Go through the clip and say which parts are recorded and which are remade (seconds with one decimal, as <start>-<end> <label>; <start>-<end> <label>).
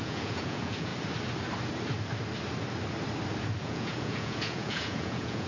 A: 0.0-0.9 remade; 0.9-3.6 recorded; 3.6-5.5 remade